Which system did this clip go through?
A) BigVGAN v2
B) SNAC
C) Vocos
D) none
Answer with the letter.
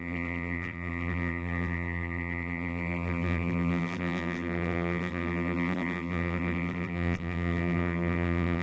A